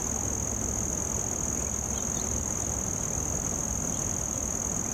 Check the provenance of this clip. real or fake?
real